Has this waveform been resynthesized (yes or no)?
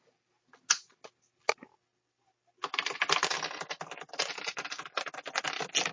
no